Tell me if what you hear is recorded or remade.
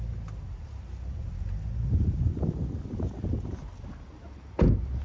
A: recorded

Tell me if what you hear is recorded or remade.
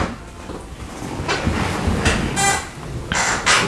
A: recorded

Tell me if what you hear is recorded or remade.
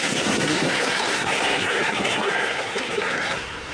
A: remade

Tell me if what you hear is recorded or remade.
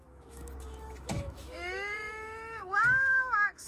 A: remade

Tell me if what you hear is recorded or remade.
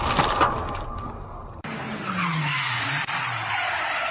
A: recorded